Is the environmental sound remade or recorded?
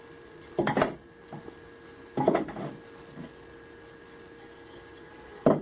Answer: recorded